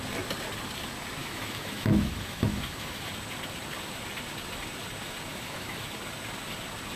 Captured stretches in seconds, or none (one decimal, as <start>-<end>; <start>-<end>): 0.0-1.2; 3.1-5.3; 5.9-7.0